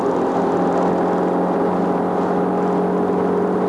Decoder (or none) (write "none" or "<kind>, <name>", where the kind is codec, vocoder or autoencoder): none